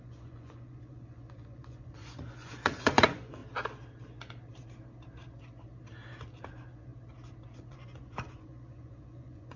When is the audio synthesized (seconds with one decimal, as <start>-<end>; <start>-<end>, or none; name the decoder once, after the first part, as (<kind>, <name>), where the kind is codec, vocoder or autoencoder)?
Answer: 0.0-3.4 (vocoder, Vocos); 6.5-6.9; 7.7-9.6